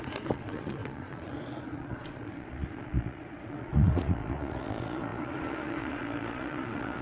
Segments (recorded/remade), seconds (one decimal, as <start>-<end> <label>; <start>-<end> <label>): 0.0-7.0 remade

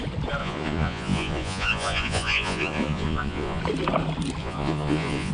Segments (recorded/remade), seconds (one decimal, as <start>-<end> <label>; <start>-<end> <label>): 0.0-0.4 recorded; 0.4-3.6 remade; 3.6-4.4 recorded; 4.4-5.3 remade

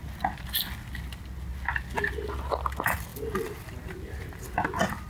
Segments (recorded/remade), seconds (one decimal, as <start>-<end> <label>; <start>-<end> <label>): 0.0-5.1 recorded

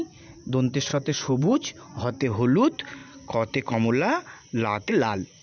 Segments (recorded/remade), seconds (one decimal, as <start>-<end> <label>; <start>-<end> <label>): 0.0-0.9 recorded; 0.9-2.0 remade; 2.0-5.4 recorded

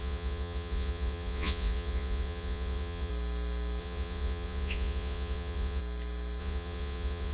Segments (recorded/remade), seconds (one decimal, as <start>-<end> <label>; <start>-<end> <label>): 0.0-3.1 remade; 3.1-3.8 recorded; 3.8-5.8 remade; 5.8-6.4 recorded; 6.4-7.3 remade

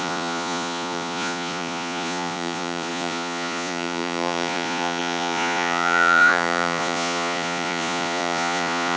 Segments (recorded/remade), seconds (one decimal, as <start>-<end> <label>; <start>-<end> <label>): 0.0-9.0 remade

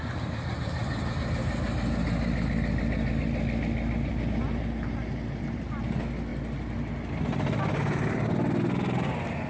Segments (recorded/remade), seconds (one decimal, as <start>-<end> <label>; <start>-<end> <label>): 0.0-9.5 recorded

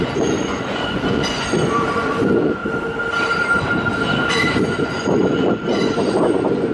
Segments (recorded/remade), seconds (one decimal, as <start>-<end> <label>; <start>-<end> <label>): 0.0-2.6 remade; 2.6-4.3 recorded; 4.3-6.7 remade